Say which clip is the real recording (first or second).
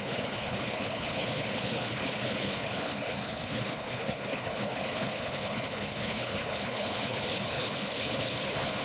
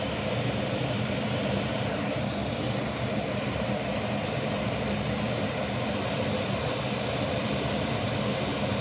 second